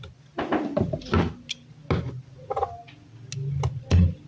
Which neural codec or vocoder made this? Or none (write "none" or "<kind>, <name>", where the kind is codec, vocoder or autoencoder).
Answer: none